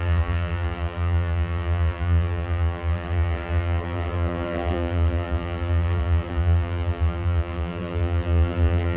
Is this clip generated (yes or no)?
yes